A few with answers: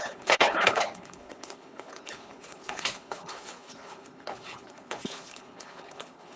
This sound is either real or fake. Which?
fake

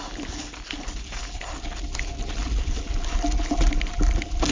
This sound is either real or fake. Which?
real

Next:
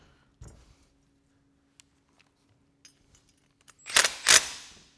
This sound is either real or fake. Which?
real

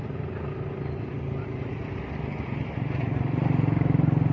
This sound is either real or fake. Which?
real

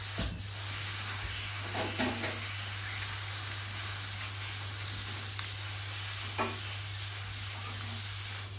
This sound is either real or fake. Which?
real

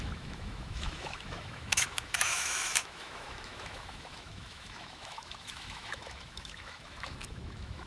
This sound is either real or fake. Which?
fake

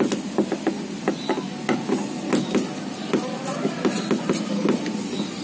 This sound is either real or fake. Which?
real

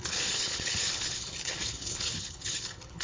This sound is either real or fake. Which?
fake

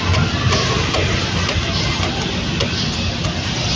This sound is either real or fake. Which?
real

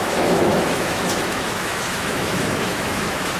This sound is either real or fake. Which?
fake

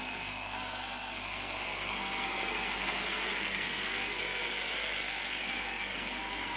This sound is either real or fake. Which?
fake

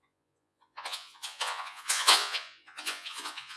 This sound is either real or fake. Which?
fake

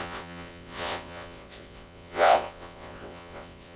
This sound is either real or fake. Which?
fake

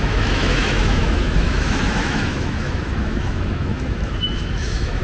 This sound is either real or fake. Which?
fake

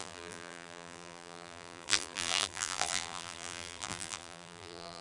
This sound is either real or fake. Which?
fake